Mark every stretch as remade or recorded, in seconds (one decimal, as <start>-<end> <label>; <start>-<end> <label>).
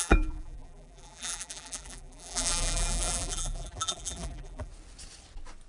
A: 0.0-4.7 remade; 4.7-5.7 recorded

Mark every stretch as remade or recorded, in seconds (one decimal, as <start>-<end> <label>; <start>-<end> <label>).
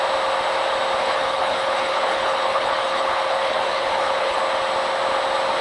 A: 0.0-1.0 recorded; 1.0-4.4 remade; 4.4-5.6 recorded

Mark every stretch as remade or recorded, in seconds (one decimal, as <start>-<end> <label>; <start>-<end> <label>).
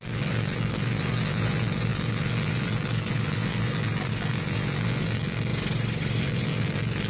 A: 0.0-5.5 remade; 5.5-6.2 recorded; 6.2-7.1 remade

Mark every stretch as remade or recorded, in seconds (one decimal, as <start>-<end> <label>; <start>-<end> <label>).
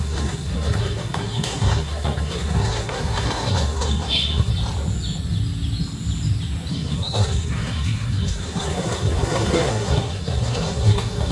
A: 0.0-4.5 remade; 4.5-6.7 recorded; 6.7-11.3 remade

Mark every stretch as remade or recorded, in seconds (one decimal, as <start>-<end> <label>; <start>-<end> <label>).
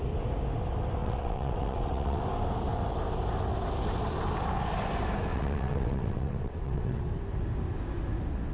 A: 0.0-1.0 recorded; 1.0-2.2 remade; 2.2-5.3 recorded; 5.3-7.0 remade; 7.0-8.5 recorded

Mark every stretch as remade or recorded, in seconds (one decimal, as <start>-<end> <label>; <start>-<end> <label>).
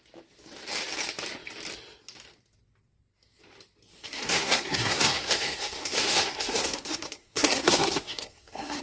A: 0.0-4.0 recorded; 4.0-8.8 remade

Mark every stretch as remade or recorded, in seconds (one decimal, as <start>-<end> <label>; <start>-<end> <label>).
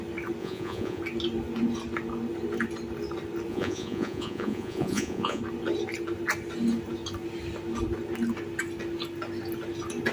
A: 0.0-0.4 recorded; 0.4-1.0 remade; 1.0-3.5 recorded; 3.5-5.4 remade; 5.4-10.1 recorded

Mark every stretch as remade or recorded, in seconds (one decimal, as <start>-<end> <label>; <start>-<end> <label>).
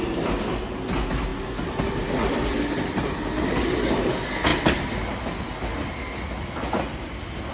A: 0.0-7.5 recorded